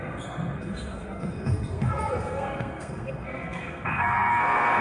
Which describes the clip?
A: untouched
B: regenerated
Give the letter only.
B